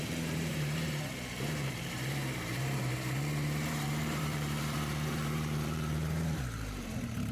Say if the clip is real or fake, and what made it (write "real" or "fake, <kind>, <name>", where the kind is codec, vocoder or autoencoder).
fake, vocoder, BigVGAN v2